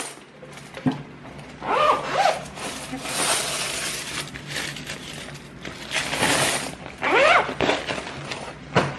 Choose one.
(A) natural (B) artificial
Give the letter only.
B